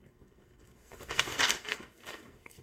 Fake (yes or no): yes